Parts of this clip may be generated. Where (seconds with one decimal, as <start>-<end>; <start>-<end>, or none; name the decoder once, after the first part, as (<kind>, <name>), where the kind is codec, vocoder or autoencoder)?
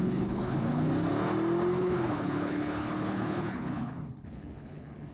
0.0-0.9 (codec, HILCodec); 1.8-5.1